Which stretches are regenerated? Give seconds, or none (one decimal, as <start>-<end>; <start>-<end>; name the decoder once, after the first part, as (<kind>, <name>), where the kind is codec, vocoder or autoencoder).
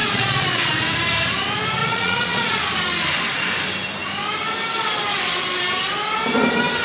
0.0-0.7 (vocoder, Vocos); 1.8-2.6